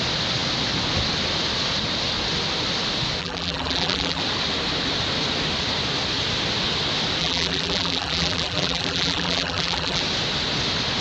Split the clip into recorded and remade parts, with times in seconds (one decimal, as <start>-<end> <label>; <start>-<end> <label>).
0.0-3.2 recorded; 3.2-4.2 remade; 4.2-7.2 recorded; 7.2-10.0 remade; 10.0-11.0 recorded